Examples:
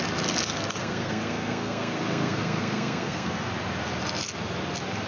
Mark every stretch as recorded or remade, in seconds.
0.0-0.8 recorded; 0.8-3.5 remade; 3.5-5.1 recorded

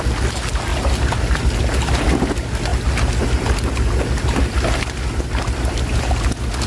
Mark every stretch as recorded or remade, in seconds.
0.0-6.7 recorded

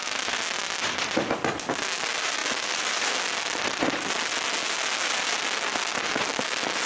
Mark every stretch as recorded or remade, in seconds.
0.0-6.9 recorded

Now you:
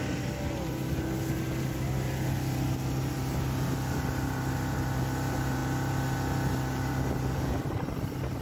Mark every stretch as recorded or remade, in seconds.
0.0-8.4 recorded

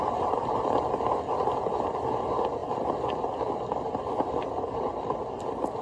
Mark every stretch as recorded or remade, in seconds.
0.0-5.8 recorded